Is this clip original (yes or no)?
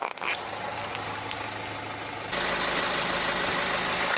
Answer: yes